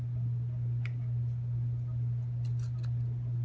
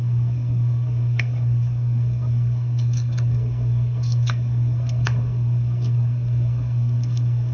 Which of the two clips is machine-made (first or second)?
second